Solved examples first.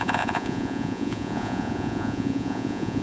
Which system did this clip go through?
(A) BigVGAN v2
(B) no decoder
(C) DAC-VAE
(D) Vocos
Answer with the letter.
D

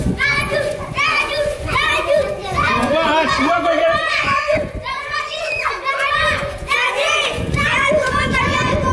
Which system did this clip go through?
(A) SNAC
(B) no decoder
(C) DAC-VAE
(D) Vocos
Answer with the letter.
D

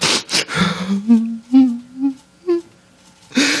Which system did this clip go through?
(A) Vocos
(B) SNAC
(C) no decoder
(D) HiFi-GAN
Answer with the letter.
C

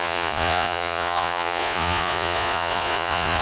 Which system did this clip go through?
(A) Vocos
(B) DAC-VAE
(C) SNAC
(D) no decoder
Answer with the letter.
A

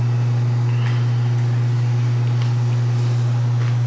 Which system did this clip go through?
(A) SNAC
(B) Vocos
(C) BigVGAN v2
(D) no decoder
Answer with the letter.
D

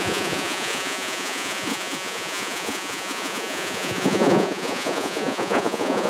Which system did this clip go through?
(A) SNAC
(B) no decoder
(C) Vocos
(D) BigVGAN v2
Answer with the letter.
C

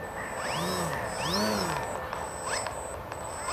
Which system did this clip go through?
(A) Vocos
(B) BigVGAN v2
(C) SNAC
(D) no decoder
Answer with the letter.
D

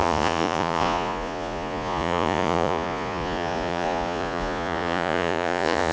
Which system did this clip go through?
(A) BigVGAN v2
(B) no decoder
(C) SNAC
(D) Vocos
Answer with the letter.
D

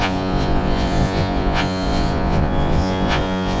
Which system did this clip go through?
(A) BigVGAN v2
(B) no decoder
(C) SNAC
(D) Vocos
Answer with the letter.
D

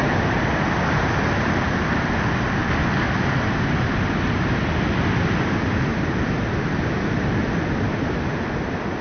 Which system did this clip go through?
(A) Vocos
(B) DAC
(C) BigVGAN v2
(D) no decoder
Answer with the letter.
D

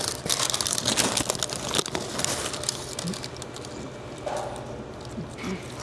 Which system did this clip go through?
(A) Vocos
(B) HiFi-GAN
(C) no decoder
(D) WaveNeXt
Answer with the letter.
C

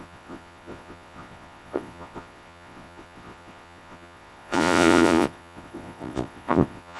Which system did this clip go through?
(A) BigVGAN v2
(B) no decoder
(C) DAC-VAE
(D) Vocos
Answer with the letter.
D